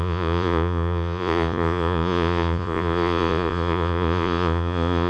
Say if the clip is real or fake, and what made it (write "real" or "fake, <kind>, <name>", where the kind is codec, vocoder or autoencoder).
fake, vocoder, Vocos